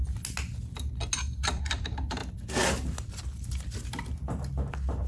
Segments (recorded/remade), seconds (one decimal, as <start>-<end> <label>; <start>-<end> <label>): 0.0-5.1 recorded